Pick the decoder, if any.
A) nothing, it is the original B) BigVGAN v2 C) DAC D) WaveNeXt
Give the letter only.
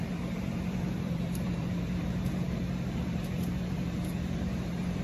B